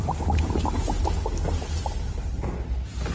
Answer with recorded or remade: recorded